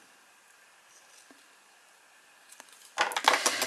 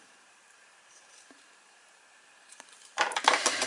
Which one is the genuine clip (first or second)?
first